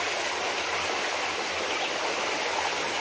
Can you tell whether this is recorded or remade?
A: recorded